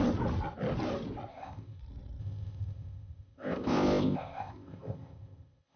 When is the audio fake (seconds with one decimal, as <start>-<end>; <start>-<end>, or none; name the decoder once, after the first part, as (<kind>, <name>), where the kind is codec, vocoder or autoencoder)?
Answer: 1.3-1.8 (codec, ZipCodec); 2.2-5.8

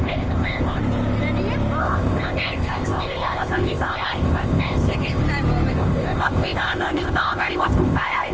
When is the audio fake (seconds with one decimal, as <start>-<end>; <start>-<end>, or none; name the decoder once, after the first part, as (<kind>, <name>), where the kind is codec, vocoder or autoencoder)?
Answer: 0.0-0.8 (codec, ZipCodec); 1.8-5.2; 5.7-8.3

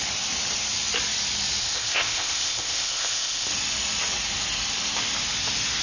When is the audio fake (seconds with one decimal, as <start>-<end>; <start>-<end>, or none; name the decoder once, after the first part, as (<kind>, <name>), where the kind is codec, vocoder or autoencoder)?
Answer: 1.6-3.5 (codec, ZipCodec)

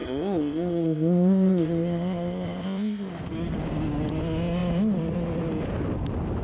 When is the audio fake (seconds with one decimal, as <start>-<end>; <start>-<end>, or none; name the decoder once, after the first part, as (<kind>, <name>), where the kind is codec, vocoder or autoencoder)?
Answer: 0.0-3.3 (codec, ZipCodec)

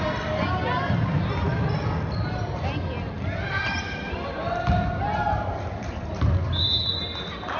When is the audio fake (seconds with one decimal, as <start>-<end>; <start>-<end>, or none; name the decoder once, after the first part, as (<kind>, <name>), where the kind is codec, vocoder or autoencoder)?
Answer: none